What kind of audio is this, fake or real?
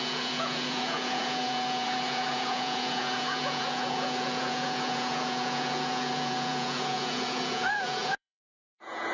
fake